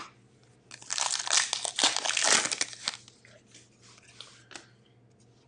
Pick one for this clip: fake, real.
real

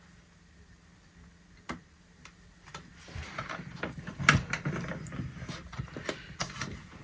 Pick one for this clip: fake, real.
real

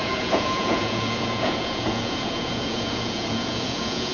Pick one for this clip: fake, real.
fake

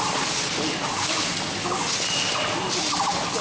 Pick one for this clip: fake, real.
real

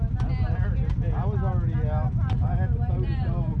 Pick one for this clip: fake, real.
real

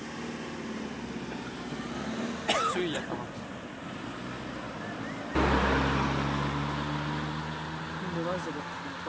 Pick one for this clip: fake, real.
real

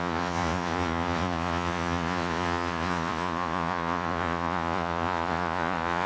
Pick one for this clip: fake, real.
fake